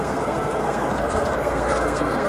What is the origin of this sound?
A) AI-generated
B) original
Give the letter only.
A